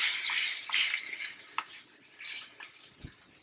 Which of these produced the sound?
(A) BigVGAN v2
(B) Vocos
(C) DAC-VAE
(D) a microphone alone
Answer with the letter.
D